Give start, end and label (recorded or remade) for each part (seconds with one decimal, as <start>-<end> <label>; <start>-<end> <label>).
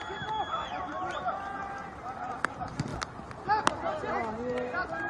0.0-5.1 recorded